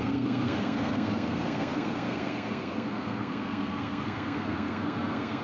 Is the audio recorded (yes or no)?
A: no